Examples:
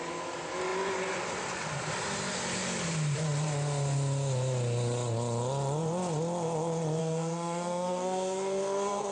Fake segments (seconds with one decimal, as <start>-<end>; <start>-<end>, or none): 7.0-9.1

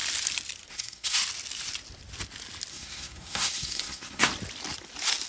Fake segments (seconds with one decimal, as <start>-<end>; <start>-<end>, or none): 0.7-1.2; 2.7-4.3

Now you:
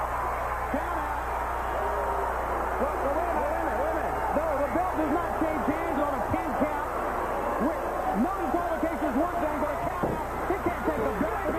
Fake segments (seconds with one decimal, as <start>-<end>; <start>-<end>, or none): none